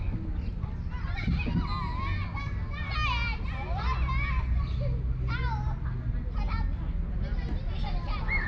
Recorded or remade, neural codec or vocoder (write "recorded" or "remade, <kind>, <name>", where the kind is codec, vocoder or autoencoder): recorded